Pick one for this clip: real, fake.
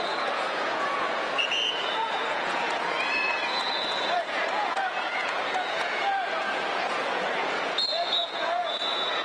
fake